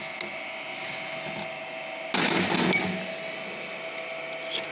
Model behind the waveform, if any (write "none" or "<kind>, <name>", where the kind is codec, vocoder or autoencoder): none